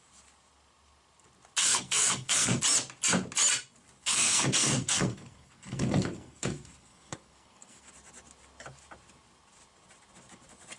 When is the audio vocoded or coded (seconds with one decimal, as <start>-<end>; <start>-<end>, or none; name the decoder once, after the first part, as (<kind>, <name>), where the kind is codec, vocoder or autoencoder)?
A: 1.6-2.6 (codec, SNAC); 4.0-7.9

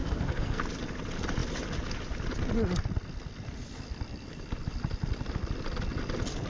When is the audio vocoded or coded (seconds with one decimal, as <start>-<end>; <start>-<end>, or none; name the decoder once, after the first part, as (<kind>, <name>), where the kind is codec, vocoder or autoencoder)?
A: 0.0-0.6 (codec, SNAC)

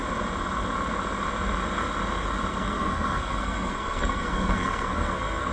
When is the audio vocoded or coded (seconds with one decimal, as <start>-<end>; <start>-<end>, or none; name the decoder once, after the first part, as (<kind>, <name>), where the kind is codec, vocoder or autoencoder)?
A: 2.5-5.5 (codec, SNAC)

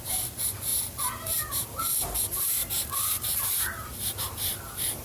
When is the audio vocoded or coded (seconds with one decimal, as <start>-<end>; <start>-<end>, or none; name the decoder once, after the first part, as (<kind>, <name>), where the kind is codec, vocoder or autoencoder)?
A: none

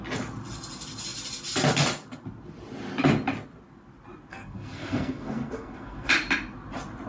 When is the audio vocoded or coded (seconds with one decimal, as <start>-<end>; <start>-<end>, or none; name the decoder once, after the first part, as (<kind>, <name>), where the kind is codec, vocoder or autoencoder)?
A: 4.3-6.1 (codec, SNAC)

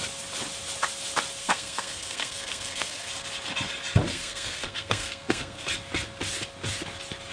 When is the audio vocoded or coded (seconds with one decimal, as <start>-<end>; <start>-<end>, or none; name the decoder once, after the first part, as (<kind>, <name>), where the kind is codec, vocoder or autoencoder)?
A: 1.4-3.1 (codec, SNAC); 4.1-5.7

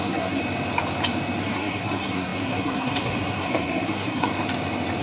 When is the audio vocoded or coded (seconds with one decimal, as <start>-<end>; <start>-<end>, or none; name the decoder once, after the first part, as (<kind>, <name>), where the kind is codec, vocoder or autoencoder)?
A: 0.0-0.4 (codec, SNAC); 1.4-4.3